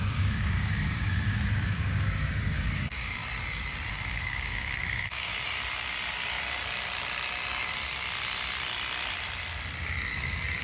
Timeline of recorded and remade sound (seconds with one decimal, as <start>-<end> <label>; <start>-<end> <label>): 0.0-3.2 remade; 3.2-3.9 recorded; 3.9-5.3 remade; 5.3-10.6 recorded

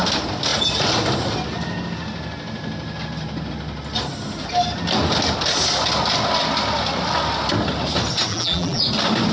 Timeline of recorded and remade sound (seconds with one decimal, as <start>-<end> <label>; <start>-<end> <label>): 0.0-8.3 recorded; 8.3-8.8 remade; 8.8-9.3 recorded

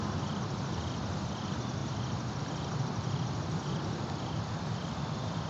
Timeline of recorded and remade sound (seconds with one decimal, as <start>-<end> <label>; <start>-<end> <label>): 0.0-1.8 recorded; 1.8-2.4 remade; 2.4-5.5 recorded